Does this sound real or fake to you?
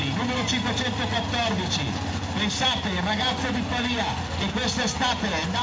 real